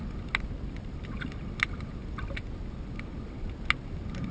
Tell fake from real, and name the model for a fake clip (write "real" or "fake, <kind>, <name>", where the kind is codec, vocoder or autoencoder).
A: real